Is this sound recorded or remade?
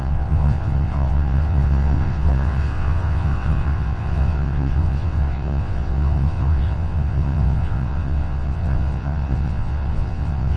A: remade